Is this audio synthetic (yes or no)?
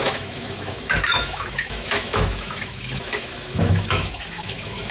yes